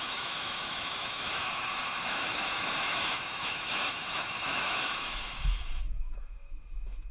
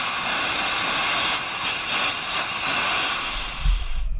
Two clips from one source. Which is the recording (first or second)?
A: second